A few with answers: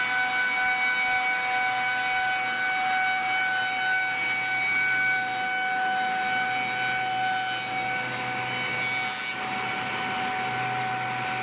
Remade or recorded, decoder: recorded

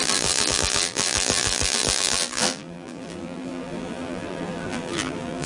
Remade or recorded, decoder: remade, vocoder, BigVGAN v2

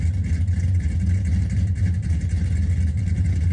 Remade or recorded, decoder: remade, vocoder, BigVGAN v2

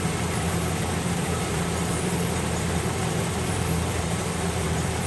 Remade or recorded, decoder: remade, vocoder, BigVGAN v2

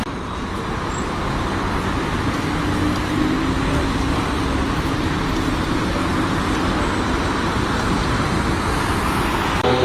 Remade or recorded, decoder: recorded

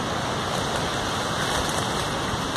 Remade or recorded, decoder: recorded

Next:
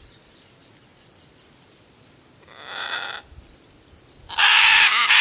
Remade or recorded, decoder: recorded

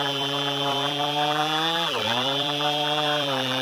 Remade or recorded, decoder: remade, vocoder, BigVGAN v2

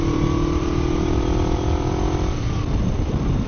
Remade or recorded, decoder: remade, vocoder, BigVGAN v2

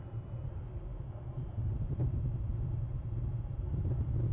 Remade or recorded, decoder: remade, vocoder, BigVGAN v2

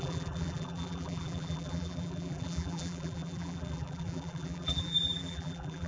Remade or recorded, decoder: remade, vocoder, BigVGAN v2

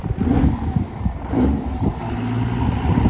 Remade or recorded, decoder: recorded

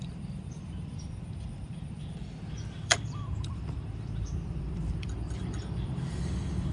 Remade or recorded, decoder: remade, vocoder, BigVGAN v2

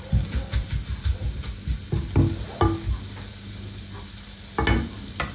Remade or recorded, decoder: recorded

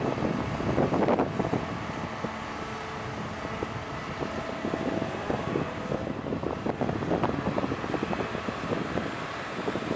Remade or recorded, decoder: recorded